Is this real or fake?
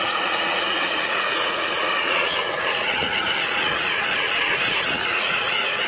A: fake